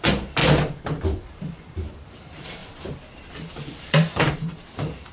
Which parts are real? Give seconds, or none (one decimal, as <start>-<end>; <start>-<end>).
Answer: 0.4-1.2; 2.6-3.5